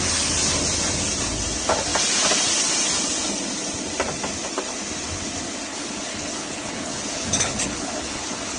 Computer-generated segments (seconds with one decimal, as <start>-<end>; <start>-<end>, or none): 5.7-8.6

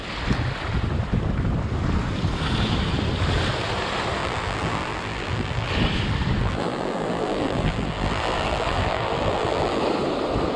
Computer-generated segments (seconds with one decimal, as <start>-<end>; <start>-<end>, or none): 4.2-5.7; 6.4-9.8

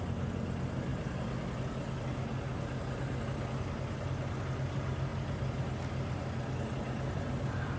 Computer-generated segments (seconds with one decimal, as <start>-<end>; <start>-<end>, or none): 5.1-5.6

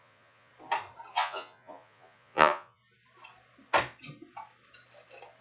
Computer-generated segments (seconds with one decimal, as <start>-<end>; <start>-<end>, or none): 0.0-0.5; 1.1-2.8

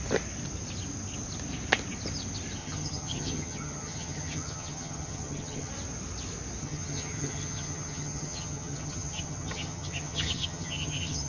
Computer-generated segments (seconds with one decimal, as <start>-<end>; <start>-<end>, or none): 2.6-5.7; 6.6-11.3